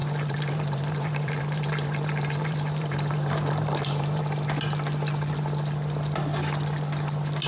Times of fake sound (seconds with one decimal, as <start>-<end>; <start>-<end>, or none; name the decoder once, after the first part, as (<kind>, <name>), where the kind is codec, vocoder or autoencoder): 0.0-4.2 (vocoder, BigVGAN v2)

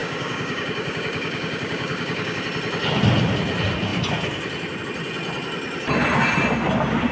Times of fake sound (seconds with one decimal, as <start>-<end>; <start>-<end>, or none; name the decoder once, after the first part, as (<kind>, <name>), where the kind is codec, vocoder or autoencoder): 0.0-2.4 (codec, DAC)

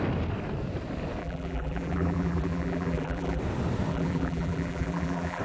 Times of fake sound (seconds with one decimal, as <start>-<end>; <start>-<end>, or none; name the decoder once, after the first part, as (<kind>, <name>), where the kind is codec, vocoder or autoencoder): 1.2-3.4 (vocoder, BigVGAN v2); 3.9-5.4

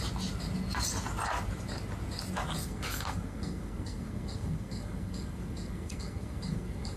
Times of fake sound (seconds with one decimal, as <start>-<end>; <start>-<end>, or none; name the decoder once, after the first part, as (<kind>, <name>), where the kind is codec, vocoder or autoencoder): 2.6-7.0 (codec, SNAC)

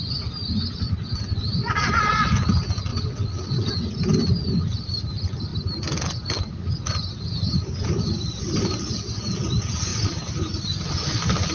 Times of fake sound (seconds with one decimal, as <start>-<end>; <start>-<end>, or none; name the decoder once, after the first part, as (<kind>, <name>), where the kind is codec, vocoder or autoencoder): 1.3-2.3 (vocoder, WaveNeXt); 2.9-3.9

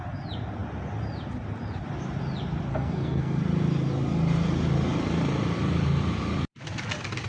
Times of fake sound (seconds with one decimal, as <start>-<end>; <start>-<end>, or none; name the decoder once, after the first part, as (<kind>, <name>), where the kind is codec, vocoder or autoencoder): 2.7-3.4 (codec, SNAC)

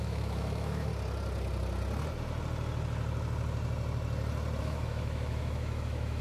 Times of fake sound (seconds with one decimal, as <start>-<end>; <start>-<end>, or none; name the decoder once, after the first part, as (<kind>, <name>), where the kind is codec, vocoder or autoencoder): 0.0-0.9 (autoencoder, DAC-VAE); 4.6-6.2